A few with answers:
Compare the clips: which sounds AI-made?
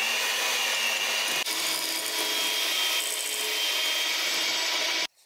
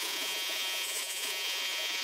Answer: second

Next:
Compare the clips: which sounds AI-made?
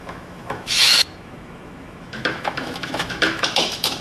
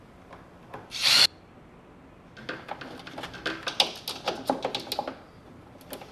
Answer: first